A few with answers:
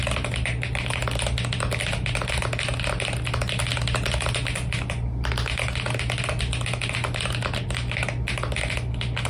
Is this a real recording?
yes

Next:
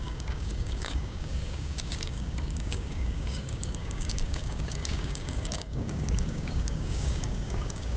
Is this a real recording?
no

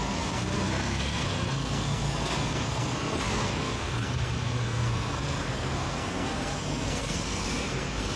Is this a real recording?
no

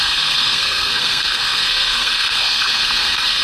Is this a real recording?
no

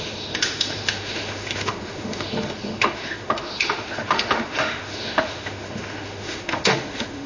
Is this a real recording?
no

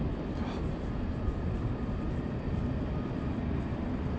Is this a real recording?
yes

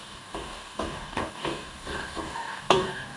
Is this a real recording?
no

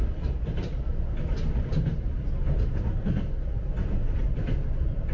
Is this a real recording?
yes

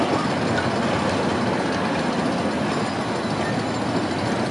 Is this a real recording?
yes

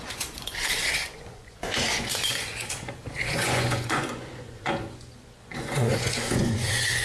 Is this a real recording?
no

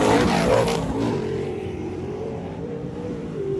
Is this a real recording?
no